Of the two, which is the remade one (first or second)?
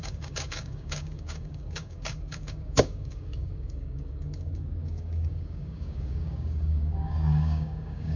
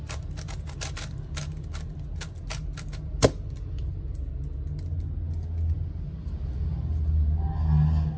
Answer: first